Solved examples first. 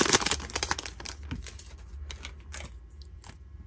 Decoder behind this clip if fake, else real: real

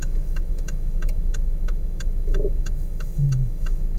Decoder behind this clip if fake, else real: fake, autoencoder, DAC-VAE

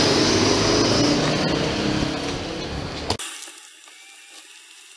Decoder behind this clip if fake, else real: real